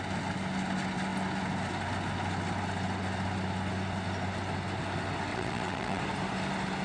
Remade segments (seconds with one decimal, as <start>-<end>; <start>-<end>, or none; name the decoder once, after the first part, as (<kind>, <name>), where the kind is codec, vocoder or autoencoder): 5.3-6.0 (vocoder, WaveNeXt)